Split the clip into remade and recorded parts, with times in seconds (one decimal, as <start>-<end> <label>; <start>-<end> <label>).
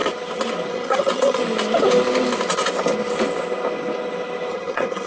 0.0-0.7 recorded; 0.7-1.4 remade; 1.4-4.5 recorded; 4.5-5.1 remade